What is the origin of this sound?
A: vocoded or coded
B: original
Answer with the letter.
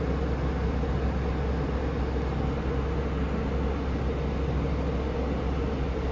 B